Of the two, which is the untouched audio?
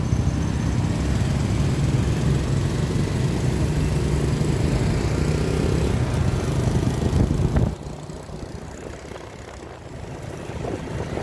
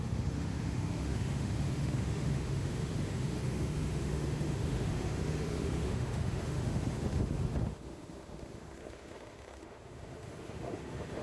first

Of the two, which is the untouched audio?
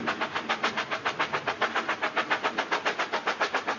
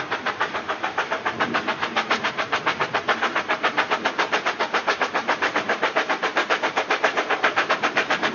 first